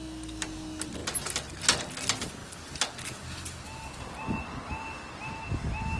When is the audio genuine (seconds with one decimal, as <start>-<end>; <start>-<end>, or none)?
0.0-6.0